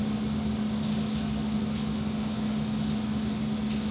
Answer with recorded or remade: recorded